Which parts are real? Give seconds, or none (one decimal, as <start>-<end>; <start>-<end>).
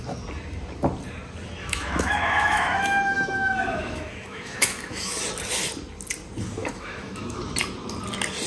0.0-1.6; 5.2-6.6; 7.4-8.5